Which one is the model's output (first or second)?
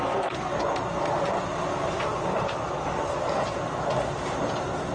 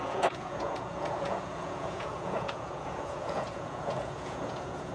second